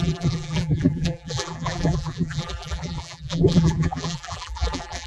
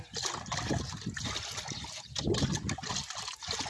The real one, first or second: second